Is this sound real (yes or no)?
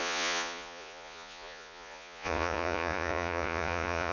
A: no